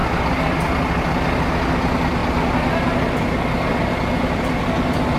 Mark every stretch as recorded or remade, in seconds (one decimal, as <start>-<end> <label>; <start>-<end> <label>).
0.0-5.2 recorded

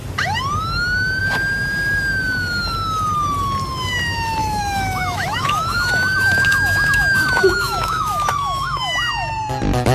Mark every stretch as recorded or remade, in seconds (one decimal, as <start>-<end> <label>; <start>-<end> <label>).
0.0-4.4 recorded; 4.4-9.1 remade; 9.1-9.9 recorded